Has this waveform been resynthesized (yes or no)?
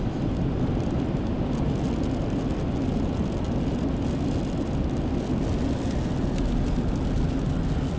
no